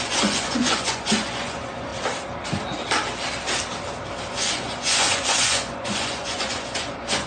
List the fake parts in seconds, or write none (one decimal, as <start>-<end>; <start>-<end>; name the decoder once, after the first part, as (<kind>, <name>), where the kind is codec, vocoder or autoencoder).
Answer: 0.0-1.9 (vocoder, Vocos); 4.3-7.3